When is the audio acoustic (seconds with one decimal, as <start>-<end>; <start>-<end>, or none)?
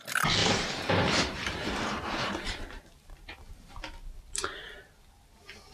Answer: 0.0-0.4; 3.8-5.7